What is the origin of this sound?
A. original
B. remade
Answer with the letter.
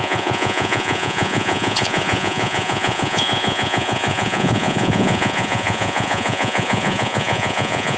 B